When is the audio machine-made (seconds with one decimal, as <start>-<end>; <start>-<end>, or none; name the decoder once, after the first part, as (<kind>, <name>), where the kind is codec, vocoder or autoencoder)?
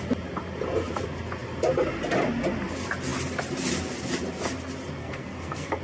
5.0-5.8 (codec, SNAC)